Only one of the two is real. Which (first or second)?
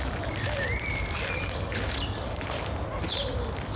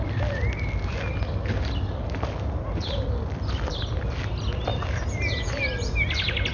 second